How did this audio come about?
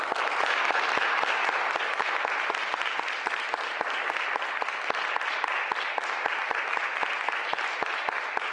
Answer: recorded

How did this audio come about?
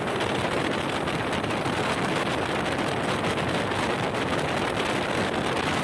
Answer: recorded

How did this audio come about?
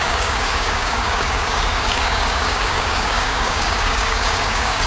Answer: remade